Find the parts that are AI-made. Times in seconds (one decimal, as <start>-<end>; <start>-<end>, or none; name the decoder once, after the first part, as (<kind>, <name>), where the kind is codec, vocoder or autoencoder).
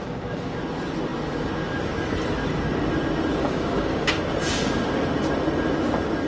0.0-0.6 (codec, DAC); 3.4-4.2